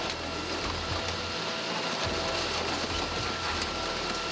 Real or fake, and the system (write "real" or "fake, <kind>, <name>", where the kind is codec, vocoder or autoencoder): real